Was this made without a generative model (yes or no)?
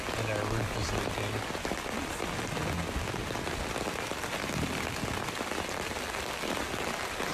yes